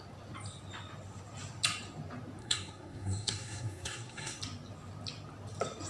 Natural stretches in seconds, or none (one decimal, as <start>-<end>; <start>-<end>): 0.0-2.4; 4.4-5.9

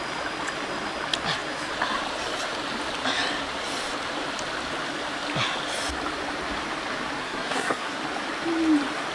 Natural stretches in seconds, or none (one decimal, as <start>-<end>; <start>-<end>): 0.0-7.2; 8.0-9.1

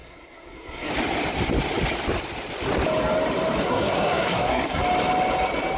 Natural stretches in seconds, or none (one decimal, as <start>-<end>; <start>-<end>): 0.9-3.6; 4.8-5.8

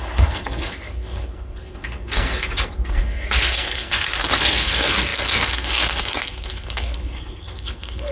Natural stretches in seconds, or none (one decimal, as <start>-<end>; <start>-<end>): none

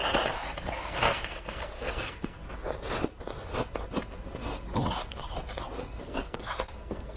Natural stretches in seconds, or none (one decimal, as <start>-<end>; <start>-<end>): 0.0-0.7; 2.4-6.0

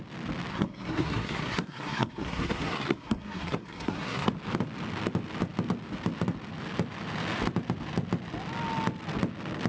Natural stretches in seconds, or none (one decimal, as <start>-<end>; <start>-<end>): 0.0-0.5; 4.3-9.7

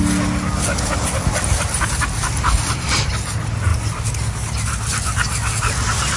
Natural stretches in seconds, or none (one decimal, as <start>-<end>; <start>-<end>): 0.0-6.2

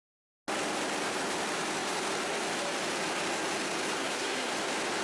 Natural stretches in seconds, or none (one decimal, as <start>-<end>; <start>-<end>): 0.0-4.0; 4.5-5.0